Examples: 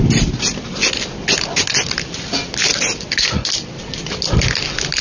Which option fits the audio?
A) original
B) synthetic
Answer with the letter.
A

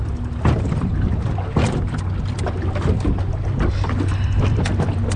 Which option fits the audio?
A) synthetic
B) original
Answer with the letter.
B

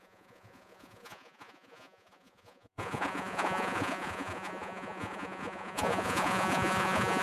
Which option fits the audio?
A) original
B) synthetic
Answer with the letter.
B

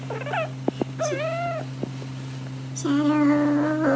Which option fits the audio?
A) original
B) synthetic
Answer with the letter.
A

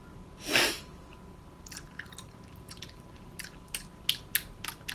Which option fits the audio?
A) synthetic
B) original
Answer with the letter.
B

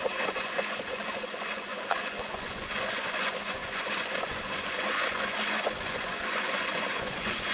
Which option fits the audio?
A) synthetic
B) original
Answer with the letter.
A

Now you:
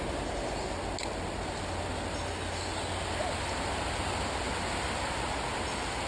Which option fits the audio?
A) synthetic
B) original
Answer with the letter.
B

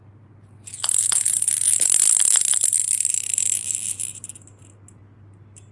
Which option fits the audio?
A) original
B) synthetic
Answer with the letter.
A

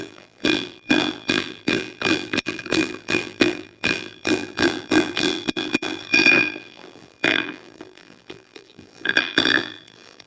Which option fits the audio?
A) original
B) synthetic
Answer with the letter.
B